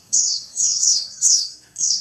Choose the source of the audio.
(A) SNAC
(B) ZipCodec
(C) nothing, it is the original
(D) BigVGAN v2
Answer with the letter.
A